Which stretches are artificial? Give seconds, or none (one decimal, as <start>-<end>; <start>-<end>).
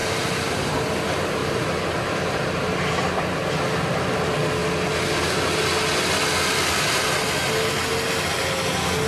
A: 0.0-0.8; 1.4-2.7